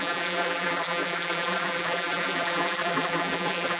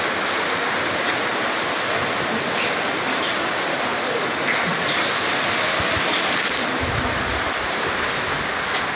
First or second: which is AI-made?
first